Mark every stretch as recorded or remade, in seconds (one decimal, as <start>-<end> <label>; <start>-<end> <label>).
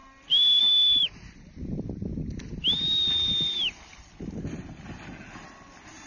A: 0.0-6.1 recorded